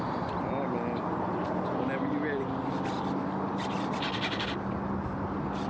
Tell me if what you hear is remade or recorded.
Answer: recorded